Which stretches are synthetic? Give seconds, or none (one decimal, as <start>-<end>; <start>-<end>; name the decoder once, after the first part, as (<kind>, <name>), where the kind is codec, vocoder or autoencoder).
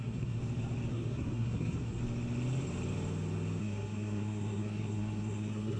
0.0-0.4 (codec, SNAC); 0.9-2.0; 3.6-5.8